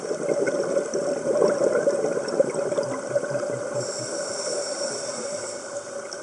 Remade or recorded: recorded